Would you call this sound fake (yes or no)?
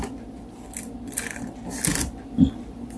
no